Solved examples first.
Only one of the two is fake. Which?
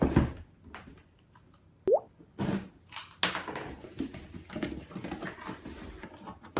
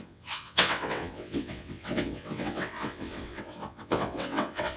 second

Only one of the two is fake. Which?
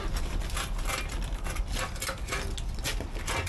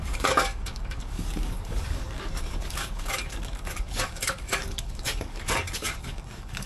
second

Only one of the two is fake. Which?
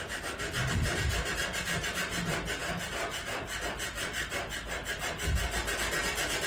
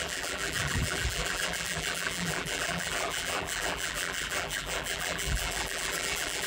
second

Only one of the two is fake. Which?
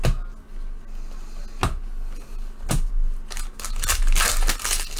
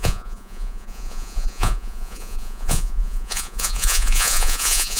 second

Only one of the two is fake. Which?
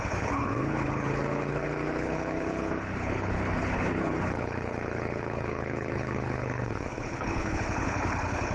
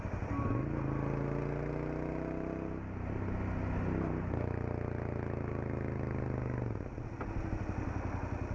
first